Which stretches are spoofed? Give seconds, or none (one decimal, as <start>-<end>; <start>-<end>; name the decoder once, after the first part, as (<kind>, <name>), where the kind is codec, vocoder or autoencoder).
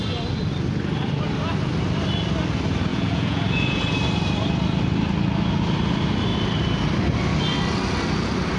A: 2.9-3.8 (vocoder, Vocos)